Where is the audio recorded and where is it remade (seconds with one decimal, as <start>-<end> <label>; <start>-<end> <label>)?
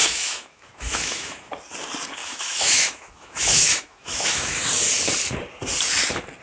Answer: 0.0-1.5 remade; 1.5-2.2 recorded; 2.2-4.6 remade; 4.6-6.4 recorded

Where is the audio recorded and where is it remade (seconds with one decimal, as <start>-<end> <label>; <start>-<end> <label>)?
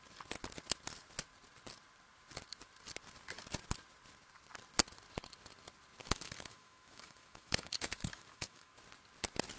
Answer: 0.0-6.0 recorded; 6.0-8.7 remade; 8.7-9.6 recorded